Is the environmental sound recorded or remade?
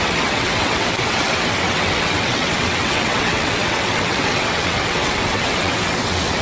remade